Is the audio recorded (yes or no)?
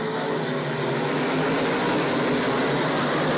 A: yes